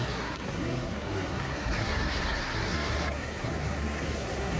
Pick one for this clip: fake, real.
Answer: fake